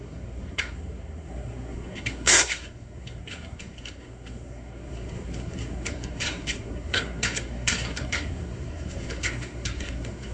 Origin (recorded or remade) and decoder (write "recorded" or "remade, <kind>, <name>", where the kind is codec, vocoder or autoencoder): remade, codec, SNAC